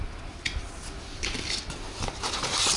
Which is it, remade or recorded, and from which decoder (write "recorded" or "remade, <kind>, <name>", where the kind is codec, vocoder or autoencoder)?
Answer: recorded